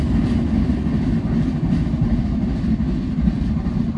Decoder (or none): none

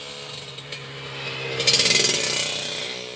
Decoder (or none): none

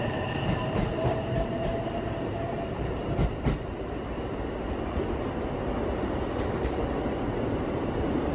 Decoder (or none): vocoder, BigVGAN v2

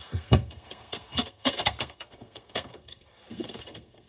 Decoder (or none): codec, SNAC